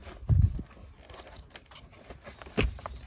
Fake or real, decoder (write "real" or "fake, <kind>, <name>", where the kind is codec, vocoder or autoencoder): real